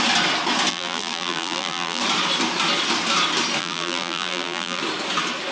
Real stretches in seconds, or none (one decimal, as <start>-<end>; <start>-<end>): 0.0-0.7; 2.0-3.6; 4.8-5.5